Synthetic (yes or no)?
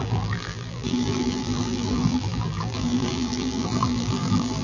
yes